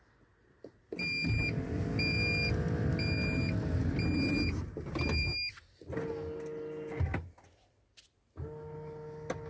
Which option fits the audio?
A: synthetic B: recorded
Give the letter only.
B